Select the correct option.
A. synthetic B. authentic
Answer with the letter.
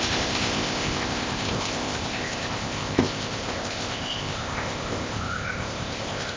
A